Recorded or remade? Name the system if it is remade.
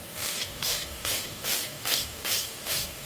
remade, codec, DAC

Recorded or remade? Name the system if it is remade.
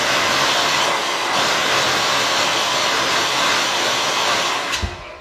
recorded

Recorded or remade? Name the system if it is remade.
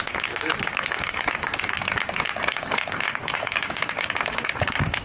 remade, codec, DAC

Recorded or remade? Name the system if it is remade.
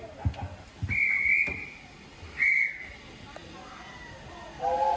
recorded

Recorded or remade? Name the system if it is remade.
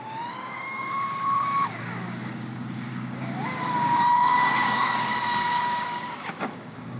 remade, codec, DAC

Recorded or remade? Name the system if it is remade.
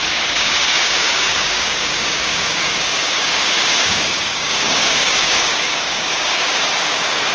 remade, codec, DAC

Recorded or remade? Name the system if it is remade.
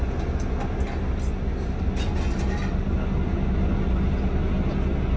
recorded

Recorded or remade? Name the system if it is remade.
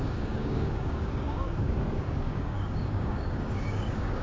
remade, codec, DAC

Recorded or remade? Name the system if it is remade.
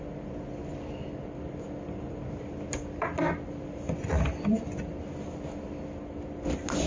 recorded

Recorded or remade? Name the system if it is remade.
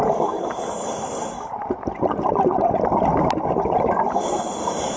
recorded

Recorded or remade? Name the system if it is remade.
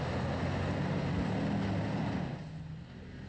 recorded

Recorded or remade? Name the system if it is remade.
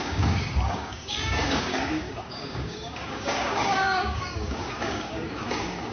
remade, codec, DAC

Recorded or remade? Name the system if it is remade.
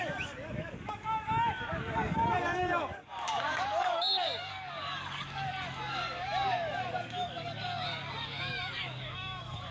remade, codec, DAC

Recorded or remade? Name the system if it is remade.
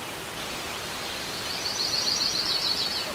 recorded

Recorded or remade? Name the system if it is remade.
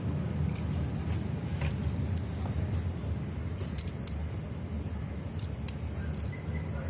recorded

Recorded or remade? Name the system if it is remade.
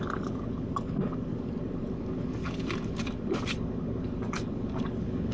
remade, codec, DAC